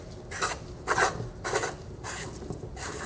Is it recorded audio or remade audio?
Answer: recorded